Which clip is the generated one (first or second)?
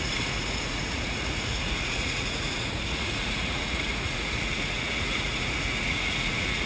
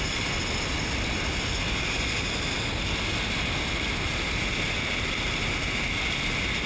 first